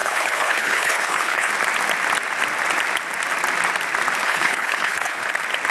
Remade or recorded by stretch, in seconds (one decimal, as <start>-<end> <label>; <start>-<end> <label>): 0.0-1.5 remade; 1.5-4.2 recorded; 4.2-5.3 remade; 5.3-5.7 recorded